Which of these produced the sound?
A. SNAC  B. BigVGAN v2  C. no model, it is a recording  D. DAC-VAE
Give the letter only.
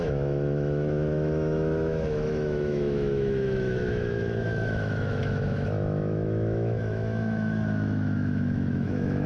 D